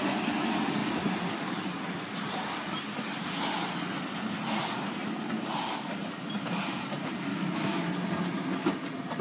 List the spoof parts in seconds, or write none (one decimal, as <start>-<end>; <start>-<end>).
7.3-7.9